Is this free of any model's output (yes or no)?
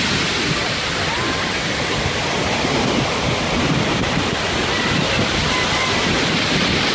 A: yes